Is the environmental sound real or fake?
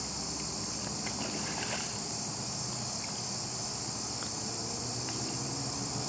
real